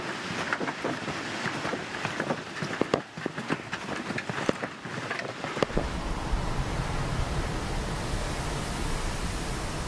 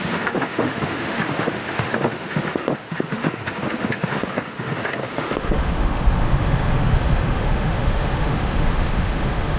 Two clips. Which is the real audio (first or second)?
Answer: first